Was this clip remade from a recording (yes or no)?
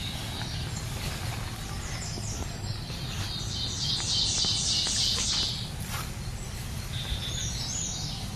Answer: no